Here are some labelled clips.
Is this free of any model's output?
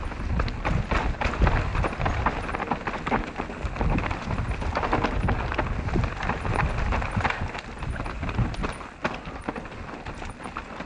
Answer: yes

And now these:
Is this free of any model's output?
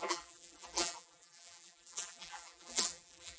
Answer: no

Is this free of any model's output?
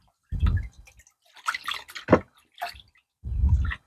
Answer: yes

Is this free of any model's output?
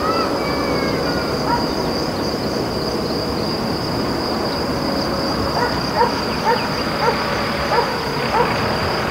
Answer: yes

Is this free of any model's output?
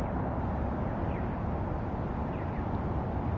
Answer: yes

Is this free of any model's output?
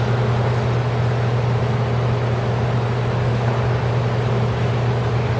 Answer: yes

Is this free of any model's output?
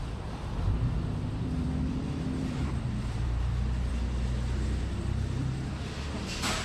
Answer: no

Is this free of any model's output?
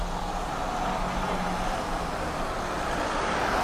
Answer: yes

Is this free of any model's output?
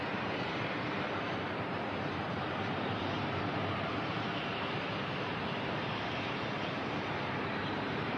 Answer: no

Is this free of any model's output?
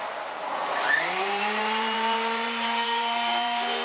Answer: no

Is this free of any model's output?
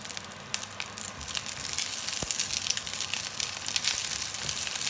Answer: yes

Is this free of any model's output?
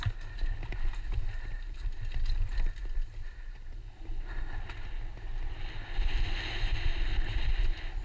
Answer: yes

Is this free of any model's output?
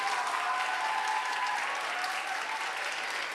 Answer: yes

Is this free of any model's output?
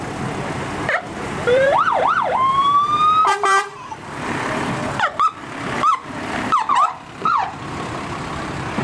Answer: no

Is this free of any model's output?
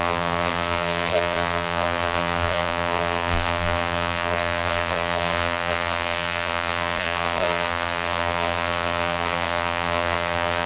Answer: no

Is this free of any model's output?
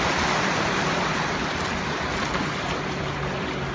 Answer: no